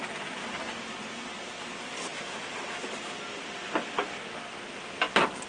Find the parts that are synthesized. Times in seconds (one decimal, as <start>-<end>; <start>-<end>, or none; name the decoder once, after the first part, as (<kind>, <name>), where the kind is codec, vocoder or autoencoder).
none